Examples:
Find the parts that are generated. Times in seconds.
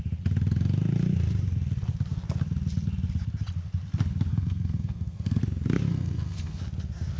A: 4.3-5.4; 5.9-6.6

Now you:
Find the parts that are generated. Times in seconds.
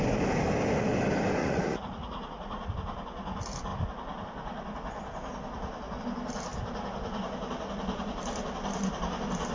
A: 1.4-2.7